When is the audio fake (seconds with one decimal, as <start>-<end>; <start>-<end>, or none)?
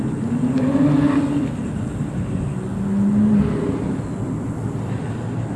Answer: none